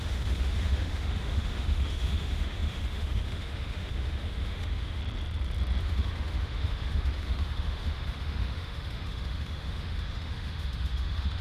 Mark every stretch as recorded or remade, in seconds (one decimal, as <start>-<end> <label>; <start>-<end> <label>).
0.0-5.0 remade; 5.0-5.8 recorded; 5.8-11.4 remade